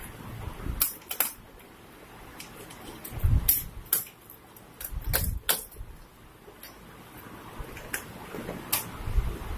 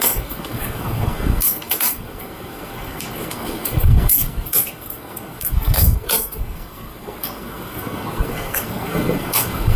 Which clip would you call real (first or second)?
first